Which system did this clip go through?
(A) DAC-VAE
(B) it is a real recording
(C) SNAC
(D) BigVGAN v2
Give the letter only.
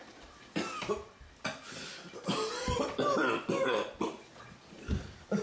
B